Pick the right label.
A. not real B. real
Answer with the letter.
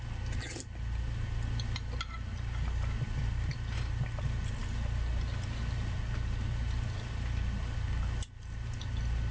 B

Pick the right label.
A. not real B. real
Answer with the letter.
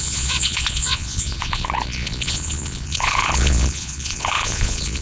A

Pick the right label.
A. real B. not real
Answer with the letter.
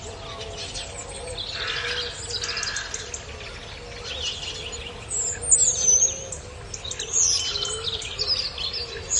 A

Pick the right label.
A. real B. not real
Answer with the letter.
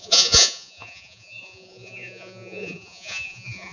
B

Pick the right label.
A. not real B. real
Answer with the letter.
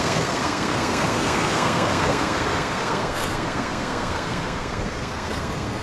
A